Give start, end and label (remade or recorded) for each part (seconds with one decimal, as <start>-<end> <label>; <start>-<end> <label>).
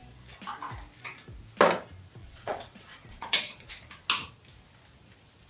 0.0-2.2 recorded; 2.2-3.7 remade; 3.7-5.5 recorded